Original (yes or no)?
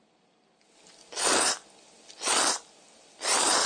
yes